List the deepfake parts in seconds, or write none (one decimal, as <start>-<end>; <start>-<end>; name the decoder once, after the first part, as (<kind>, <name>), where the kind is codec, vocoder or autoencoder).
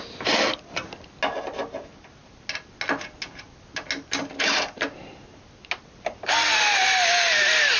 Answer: none